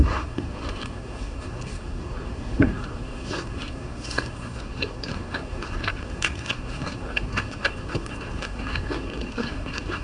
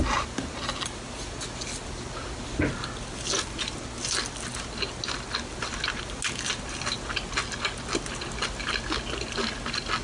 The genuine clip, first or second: second